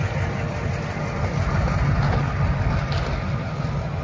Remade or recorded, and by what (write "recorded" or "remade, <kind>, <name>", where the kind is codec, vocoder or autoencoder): recorded